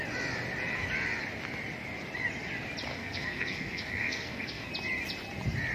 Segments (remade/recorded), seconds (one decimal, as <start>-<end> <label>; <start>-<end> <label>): 0.0-2.9 recorded; 2.9-4.7 remade; 4.7-5.7 recorded

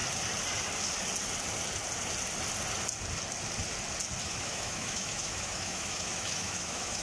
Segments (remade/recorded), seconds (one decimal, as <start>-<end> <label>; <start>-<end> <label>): 0.0-4.2 recorded; 4.2-7.0 remade

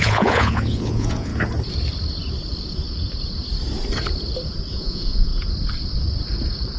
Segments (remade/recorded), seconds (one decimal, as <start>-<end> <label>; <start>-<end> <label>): 0.0-1.3 remade; 1.3-4.7 recorded; 4.7-5.3 remade; 5.3-6.8 recorded

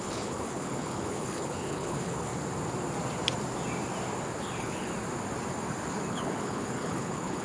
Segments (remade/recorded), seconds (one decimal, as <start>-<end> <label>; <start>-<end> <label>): 0.0-2.3 remade; 2.3-4.4 recorded; 4.4-4.9 remade; 4.9-6.1 recorded; 6.1-7.4 remade

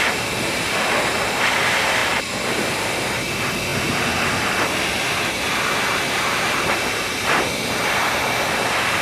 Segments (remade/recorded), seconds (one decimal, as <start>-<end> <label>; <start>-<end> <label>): 0.0-9.0 recorded

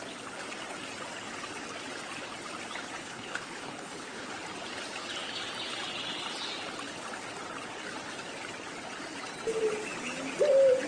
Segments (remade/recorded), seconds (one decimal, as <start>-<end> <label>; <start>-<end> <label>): 0.0-3.0 recorded; 3.0-4.3 remade; 4.3-10.9 recorded